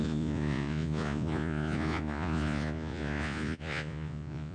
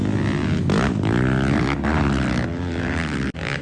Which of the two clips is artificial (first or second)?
first